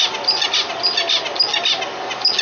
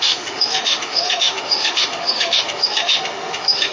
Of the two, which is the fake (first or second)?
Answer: second